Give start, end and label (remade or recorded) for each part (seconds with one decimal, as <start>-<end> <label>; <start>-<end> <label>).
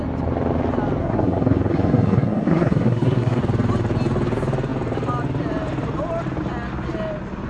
0.0-1.0 recorded; 1.0-3.4 remade; 3.4-7.5 recorded